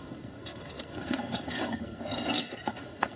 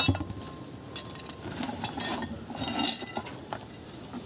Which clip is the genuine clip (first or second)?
second